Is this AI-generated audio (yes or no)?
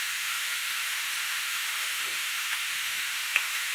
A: yes